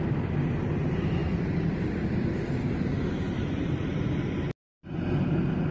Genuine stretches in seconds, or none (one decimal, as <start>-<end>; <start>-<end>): 0.0-1.2; 2.3-3.4; 4.0-5.7